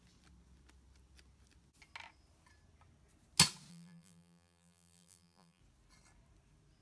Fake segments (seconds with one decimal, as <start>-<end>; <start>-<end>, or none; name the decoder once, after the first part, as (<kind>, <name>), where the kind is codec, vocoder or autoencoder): 3.7-5.6 (vocoder, BigVGAN v2)